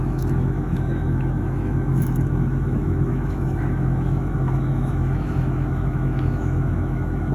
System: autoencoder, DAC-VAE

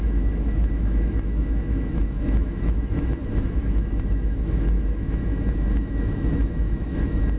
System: autoencoder, DAC-VAE